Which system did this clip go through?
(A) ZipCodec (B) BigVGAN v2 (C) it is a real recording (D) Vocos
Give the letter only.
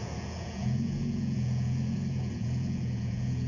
D